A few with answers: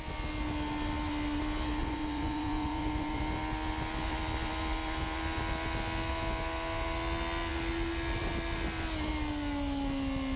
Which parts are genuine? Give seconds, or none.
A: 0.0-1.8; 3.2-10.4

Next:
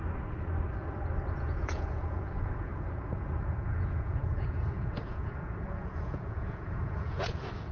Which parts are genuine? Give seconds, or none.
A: 0.0-1.3

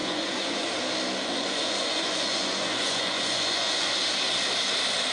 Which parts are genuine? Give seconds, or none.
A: 0.7-1.2; 3.9-5.1

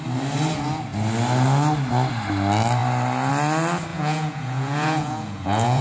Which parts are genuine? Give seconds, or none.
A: 0.0-3.9

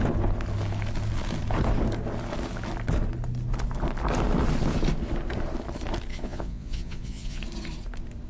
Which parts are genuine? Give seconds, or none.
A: 0.0-6.1; 7.4-8.3

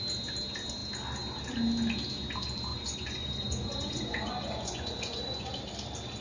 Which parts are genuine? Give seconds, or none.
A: 0.0-2.7; 5.5-6.2